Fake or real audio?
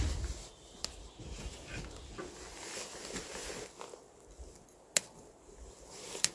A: real